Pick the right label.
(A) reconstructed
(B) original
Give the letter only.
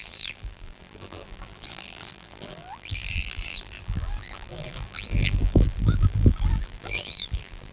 A